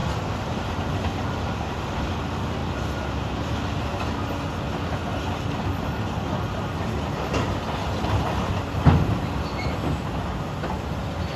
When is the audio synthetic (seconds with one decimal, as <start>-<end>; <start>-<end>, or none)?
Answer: none

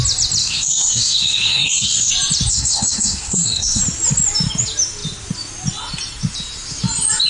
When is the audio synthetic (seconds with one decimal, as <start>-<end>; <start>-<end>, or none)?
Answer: 0.4-2.1; 2.5-3.8

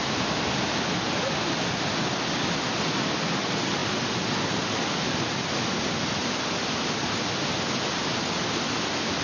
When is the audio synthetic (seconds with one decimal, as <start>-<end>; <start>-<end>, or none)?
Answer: none

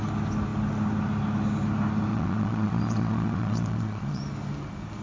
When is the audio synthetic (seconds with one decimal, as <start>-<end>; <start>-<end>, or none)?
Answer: 2.1-4.2

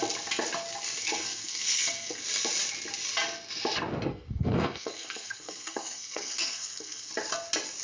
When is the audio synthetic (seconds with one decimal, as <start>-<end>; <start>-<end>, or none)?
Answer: 1.0-2.2; 4.1-7.1